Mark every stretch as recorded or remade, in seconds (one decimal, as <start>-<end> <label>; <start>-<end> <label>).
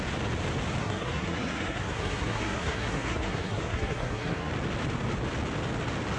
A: 0.0-0.8 recorded; 0.8-4.5 remade; 4.5-6.2 recorded